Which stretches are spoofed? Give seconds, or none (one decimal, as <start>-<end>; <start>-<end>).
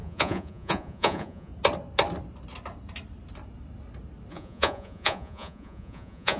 0.0-1.5; 4.3-6.4